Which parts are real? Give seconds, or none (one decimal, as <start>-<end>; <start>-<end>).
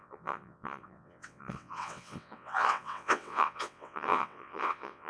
none